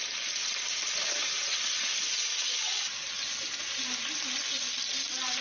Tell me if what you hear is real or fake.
real